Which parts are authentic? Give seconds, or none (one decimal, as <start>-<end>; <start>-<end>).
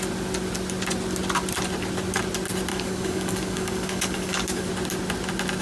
0.0-2.7; 4.7-5.6